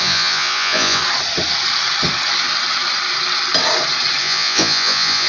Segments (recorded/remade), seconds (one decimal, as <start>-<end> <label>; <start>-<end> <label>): 0.0-1.0 remade; 1.0-4.2 recorded; 4.2-5.3 remade